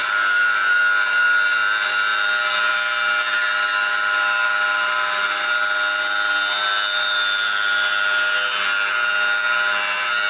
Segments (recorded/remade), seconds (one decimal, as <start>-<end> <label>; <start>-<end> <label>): 0.0-0.8 remade; 0.8-10.3 recorded